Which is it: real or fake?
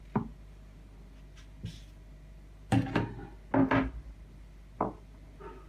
real